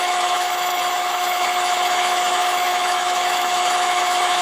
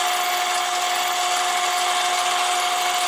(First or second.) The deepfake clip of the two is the first